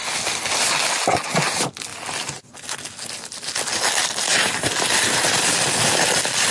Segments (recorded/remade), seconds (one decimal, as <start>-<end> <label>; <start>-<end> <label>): 0.0-4.3 recorded; 4.3-5.4 remade; 5.4-6.5 recorded